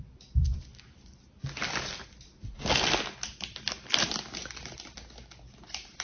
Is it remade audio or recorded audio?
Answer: recorded